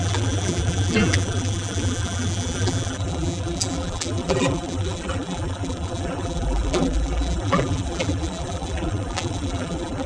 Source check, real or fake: fake